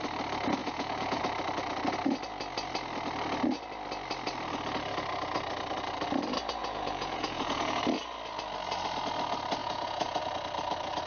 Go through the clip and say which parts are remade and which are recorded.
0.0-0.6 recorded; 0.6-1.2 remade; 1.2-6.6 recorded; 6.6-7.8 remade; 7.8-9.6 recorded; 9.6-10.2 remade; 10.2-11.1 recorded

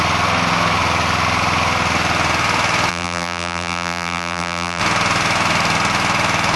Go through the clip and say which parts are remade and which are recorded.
0.0-2.9 recorded; 2.9-4.8 remade; 4.8-6.6 recorded

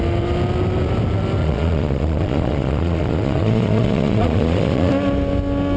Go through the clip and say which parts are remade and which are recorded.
0.0-1.4 recorded; 1.4-4.9 remade; 4.9-5.8 recorded

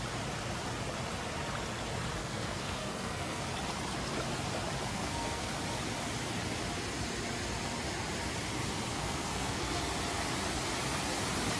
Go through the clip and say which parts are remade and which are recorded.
0.0-2.2 recorded; 2.2-3.4 remade; 3.4-4.9 recorded; 4.9-5.5 remade; 5.5-8.9 recorded; 8.9-9.8 remade; 9.8-11.6 recorded